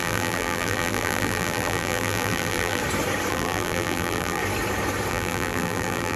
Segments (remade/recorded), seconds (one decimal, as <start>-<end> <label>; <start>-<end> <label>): 0.0-2.8 remade; 2.8-3.3 recorded; 3.3-4.4 remade; 4.4-5.1 recorded; 5.1-6.2 remade